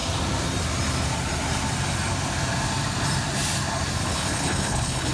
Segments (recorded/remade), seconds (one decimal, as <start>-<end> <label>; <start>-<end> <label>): 0.0-4.1 recorded; 4.1-5.1 remade